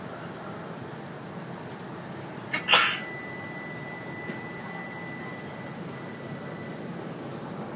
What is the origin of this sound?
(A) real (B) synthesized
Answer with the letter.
A